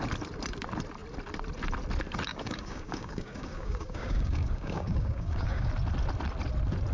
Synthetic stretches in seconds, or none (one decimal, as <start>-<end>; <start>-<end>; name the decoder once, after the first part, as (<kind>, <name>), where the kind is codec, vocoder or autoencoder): 2.3-5.7 (codec, DAC)